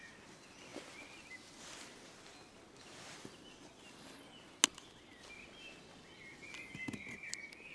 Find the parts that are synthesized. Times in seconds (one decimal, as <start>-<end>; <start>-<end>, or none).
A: none